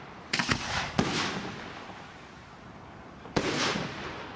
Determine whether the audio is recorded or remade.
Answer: recorded